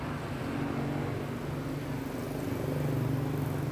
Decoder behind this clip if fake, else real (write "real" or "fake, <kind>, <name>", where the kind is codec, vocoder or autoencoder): real